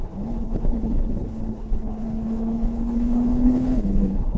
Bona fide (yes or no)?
no